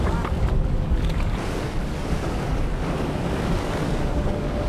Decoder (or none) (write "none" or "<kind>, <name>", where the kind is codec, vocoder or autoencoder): codec, DAC